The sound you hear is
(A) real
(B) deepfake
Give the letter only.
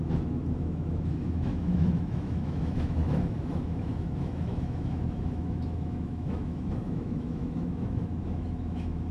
B